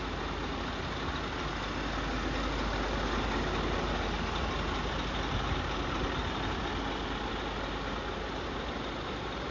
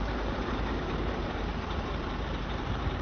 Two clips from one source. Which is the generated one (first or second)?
second